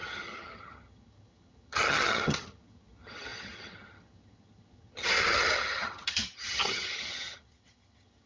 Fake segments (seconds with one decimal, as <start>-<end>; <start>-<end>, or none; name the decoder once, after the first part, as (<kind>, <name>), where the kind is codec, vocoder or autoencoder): 0.0-8.3 (vocoder, HiFi-GAN)